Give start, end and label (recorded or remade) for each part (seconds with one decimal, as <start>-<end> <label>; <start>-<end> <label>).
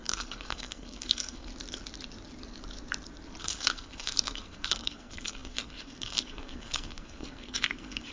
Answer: 0.0-1.5 remade; 1.5-3.4 recorded; 3.4-8.1 remade